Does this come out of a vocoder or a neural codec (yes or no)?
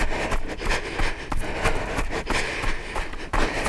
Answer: no